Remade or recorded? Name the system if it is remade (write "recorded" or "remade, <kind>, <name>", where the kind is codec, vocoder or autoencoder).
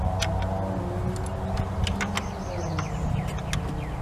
recorded